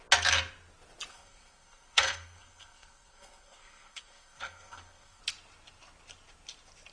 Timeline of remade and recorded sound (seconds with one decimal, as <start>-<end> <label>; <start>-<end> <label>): 0.0-1.1 recorded; 1.1-5.2 remade; 5.2-6.9 recorded